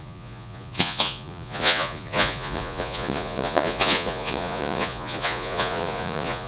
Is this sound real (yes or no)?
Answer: no